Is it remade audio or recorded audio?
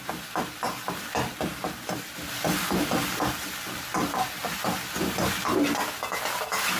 recorded